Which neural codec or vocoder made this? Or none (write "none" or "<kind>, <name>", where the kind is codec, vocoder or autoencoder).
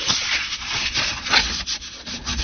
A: vocoder, Vocos